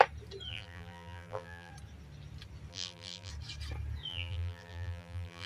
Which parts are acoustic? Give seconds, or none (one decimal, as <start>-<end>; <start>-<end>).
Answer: 0.0-0.5; 1.7-2.7; 3.3-4.1